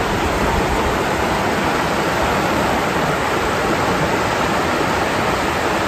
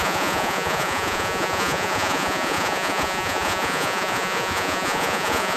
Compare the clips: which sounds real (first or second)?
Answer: first